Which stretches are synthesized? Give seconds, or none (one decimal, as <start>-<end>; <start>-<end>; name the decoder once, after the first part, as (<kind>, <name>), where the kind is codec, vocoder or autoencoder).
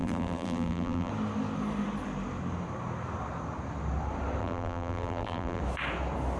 0.0-1.1 (vocoder, BigVGAN v2); 4.4-5.6